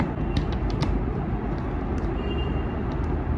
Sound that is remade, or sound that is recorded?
recorded